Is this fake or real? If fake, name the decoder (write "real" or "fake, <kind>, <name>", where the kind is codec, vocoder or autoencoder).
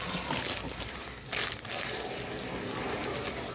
real